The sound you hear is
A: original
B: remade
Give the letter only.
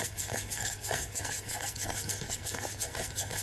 B